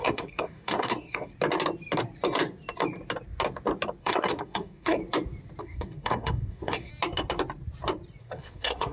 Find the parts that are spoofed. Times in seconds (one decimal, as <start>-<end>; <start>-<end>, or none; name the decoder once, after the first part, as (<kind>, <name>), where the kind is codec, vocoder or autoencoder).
0.0-1.3 (codec, SNAC); 4.0-5.0; 5.6-6.9; 8.2-8.9